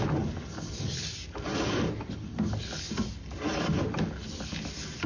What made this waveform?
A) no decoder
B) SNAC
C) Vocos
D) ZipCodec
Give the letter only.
A